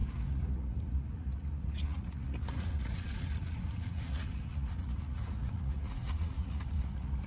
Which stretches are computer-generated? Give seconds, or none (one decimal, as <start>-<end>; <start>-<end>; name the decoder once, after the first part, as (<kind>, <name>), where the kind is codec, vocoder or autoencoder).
0.0-7.3 (vocoder, Vocos)